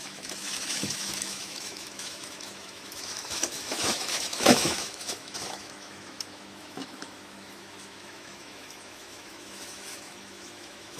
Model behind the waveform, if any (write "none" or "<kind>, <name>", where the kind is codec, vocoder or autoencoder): autoencoder, DAC-VAE